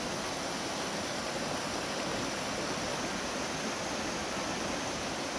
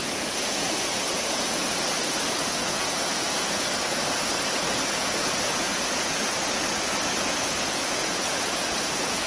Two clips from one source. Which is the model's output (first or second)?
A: second